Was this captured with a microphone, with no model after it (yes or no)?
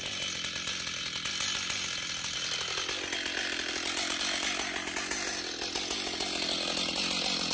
yes